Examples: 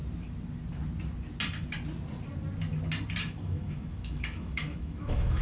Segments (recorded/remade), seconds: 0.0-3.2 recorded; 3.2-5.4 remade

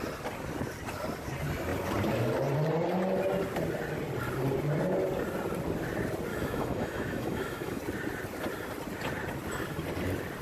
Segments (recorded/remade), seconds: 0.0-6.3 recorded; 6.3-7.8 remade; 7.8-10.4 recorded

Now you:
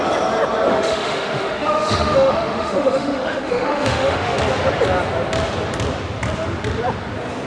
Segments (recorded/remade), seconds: 0.0-0.7 recorded; 0.7-4.4 remade; 4.4-7.5 recorded

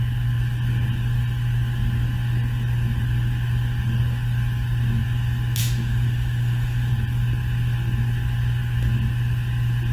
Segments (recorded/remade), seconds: 0.0-5.6 recorded; 5.6-6.9 remade; 6.9-9.9 recorded

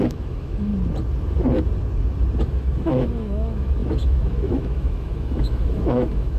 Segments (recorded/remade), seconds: 0.0-0.7 remade; 0.7-2.4 recorded; 2.4-6.4 remade